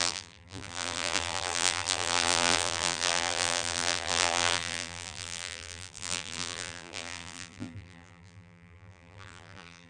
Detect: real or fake fake